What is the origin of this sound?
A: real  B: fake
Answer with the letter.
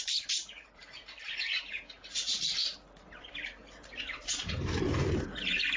B